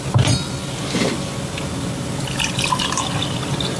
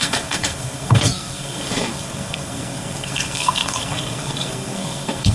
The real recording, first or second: first